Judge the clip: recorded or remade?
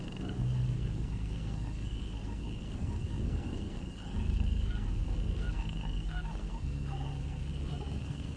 remade